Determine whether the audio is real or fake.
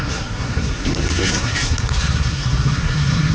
fake